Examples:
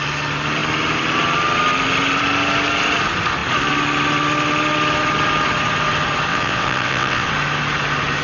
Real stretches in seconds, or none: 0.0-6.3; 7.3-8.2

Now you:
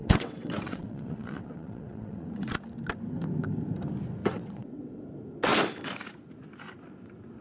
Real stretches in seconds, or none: 2.5-4.2; 5.0-7.4

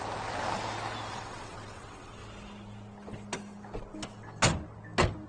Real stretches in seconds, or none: 0.0-1.1; 2.2-5.3

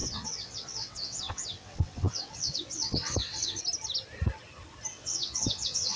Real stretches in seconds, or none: 3.6-4.9

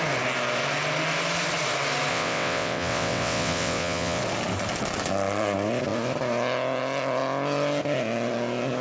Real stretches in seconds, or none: 0.0-2.1; 4.2-8.8